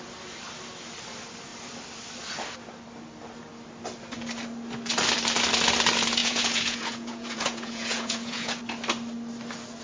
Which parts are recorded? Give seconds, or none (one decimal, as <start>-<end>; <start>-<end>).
0.0-6.2; 8.6-9.8